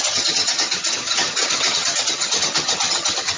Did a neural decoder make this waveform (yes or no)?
yes